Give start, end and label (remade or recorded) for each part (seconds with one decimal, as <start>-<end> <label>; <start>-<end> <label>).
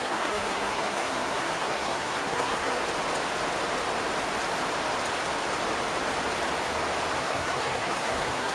0.0-2.8 remade; 2.8-7.2 recorded; 7.2-8.5 remade